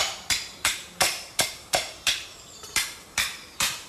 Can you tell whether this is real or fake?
fake